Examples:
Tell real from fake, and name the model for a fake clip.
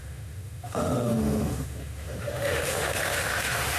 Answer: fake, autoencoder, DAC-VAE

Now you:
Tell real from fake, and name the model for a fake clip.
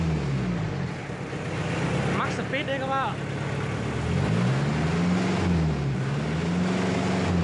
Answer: real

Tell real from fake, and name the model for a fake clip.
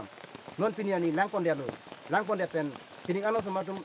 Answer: fake, autoencoder, DAC-VAE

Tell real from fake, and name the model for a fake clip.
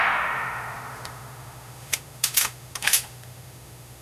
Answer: fake, autoencoder, DAC-VAE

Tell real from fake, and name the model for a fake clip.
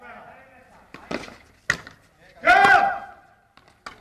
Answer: real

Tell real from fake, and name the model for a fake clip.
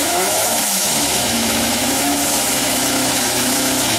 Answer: fake, autoencoder, DAC-VAE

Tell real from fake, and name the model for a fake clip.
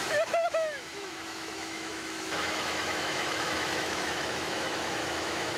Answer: fake, autoencoder, DAC-VAE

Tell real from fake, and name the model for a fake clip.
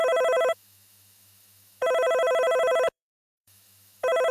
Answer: fake, autoencoder, DAC-VAE